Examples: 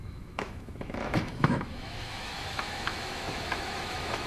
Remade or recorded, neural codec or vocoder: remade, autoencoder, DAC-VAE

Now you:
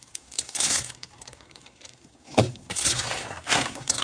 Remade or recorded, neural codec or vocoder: remade, codec, SNAC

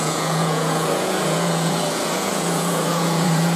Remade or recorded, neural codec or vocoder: remade, vocoder, Vocos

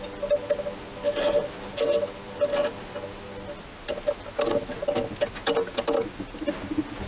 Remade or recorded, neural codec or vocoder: recorded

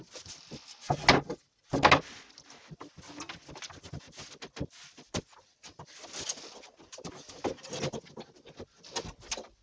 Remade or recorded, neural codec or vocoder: recorded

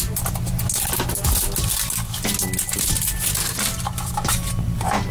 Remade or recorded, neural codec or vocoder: recorded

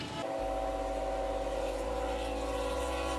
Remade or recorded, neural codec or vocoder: recorded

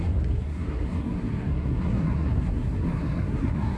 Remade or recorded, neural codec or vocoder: remade, codec, SNAC